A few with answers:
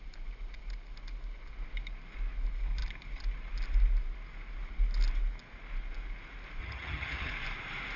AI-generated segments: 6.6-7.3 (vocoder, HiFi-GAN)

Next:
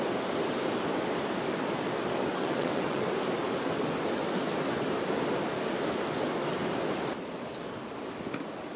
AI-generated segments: 2.3-3.0 (vocoder, WaveNeXt)

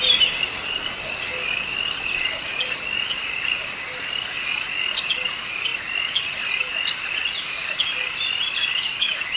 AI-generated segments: none